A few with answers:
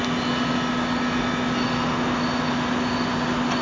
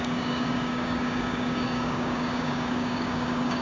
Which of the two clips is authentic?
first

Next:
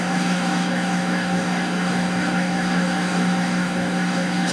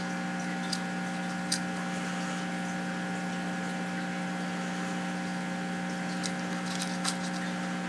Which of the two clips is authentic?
second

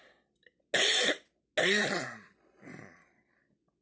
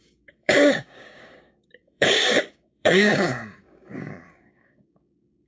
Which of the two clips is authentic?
first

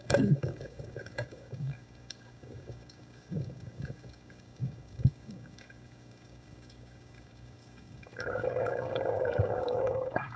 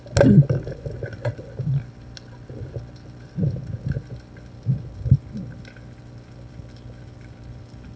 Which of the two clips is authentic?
second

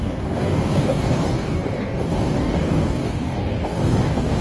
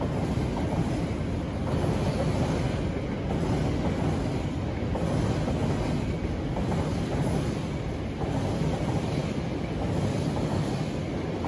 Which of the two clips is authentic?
second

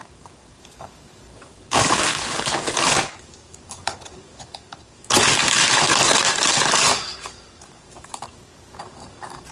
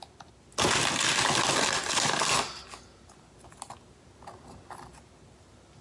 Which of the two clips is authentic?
second